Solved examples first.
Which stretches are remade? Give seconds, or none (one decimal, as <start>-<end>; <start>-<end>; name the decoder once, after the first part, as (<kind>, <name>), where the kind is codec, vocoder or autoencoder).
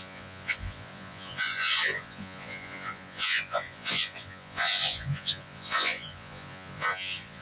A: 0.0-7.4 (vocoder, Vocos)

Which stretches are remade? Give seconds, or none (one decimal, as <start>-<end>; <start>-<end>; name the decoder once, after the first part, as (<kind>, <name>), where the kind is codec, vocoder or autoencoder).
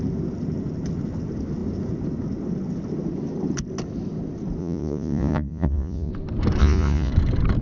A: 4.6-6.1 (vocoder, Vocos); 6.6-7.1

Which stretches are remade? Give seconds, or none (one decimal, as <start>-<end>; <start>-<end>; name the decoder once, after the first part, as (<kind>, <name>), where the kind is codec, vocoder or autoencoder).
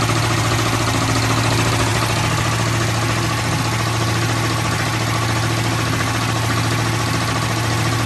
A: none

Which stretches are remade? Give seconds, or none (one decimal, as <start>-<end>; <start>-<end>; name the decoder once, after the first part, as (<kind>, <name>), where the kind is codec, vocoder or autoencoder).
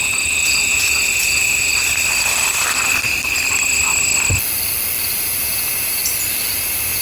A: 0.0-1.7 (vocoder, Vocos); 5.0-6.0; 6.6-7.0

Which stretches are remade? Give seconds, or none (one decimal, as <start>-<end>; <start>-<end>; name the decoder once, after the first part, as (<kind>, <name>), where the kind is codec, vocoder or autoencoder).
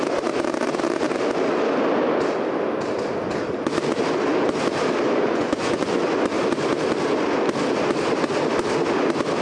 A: 5.2-6.0 (vocoder, Vocos)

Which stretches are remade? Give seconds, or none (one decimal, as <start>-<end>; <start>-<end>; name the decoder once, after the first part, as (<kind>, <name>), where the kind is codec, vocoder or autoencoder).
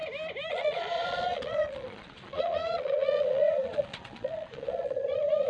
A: 0.5-5.5 (vocoder, Vocos)